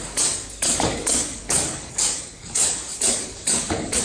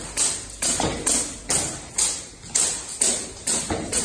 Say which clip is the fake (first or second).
first